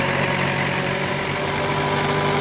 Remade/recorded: recorded